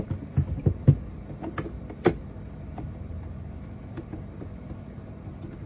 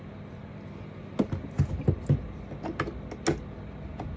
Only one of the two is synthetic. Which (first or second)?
first